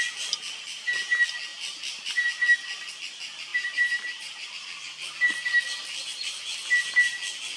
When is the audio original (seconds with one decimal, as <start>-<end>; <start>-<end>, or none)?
0.0-3.5; 4.5-7.6